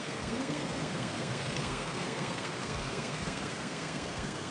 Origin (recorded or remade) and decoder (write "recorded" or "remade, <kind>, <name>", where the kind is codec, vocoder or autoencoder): remade, codec, SNAC